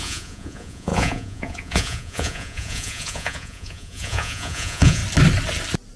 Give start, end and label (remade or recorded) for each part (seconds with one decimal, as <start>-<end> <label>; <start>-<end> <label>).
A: 0.0-5.0 remade; 5.0-6.0 recorded